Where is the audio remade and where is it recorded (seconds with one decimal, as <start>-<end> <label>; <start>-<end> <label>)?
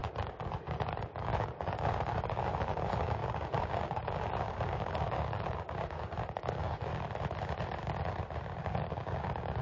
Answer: 0.0-6.9 remade; 6.9-8.6 recorded; 8.6-9.6 remade